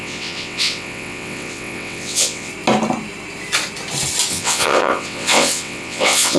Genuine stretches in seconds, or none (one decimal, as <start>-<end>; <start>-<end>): 2.5-4.3